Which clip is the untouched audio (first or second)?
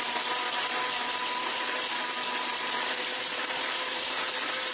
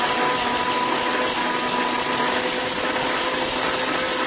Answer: second